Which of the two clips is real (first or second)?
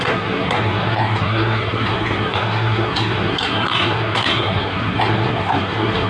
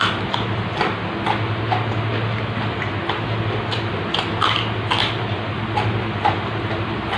second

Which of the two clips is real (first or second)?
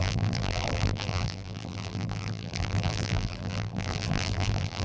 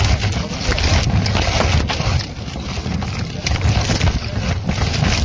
second